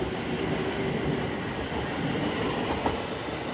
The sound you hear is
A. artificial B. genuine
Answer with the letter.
B